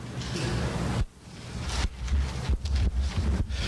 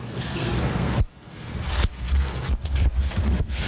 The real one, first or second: first